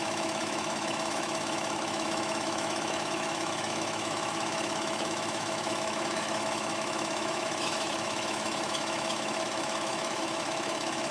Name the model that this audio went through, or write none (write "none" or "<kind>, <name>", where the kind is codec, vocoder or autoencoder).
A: autoencoder, DAC-VAE